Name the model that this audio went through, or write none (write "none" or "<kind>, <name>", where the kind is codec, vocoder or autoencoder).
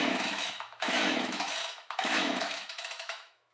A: autoencoder, DAC-VAE